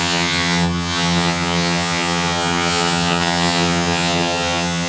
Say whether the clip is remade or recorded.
remade